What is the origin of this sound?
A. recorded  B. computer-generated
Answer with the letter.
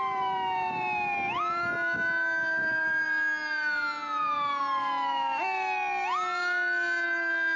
A